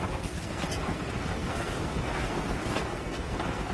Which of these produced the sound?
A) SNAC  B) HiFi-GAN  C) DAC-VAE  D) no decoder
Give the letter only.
A